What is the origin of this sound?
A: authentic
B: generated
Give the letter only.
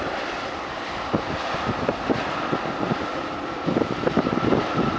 A